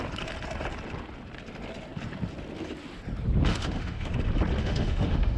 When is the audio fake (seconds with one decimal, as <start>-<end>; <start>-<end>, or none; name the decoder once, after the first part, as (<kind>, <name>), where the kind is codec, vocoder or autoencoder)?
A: 3.5-4.1 (autoencoder, DAC-VAE); 4.6-5.4

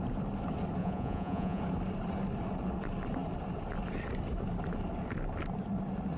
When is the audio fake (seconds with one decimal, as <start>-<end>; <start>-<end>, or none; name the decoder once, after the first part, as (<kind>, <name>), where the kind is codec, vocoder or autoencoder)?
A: 0.8-1.6 (vocoder, Vocos)

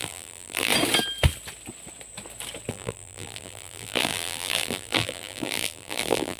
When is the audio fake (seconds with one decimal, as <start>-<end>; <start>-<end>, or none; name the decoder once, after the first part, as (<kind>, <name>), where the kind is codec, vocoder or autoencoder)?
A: 0.0-0.7 (vocoder, BigVGAN v2); 2.7-6.4

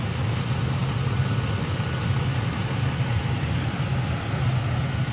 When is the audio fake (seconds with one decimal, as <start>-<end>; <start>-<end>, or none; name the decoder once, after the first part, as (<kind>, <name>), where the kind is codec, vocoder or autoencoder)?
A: none

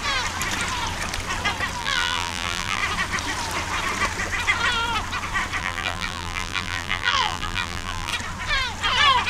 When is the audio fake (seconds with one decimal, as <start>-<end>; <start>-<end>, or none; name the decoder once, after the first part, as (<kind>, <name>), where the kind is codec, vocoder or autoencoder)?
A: 1.8-2.8 (vocoder, BigVGAN v2); 5.6-8.1

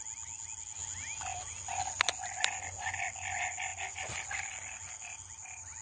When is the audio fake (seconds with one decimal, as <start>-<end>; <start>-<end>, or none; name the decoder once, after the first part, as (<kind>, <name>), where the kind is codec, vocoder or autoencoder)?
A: none

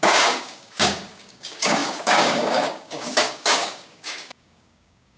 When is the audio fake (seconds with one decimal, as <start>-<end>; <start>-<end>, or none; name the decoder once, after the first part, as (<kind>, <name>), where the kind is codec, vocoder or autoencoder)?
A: 0.0-5.2 (codec, DAC)

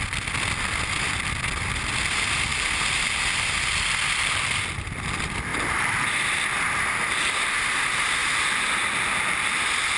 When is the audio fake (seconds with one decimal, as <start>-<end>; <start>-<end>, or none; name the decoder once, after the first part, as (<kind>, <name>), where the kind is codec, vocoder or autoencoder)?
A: 5.5-7.5 (vocoder, BigVGAN v2)